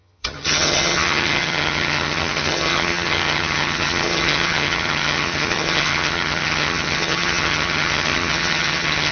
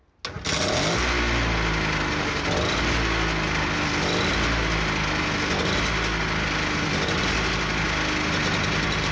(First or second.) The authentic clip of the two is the second